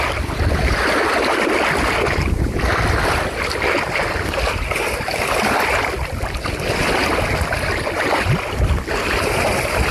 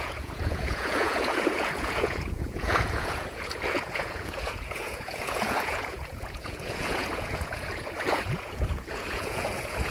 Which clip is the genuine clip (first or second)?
first